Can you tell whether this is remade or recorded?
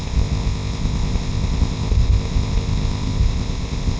remade